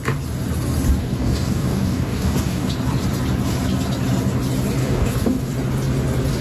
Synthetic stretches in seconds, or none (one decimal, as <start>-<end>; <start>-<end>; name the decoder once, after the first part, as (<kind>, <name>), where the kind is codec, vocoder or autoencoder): 1.0-2.7 (codec, DAC); 4.8-5.5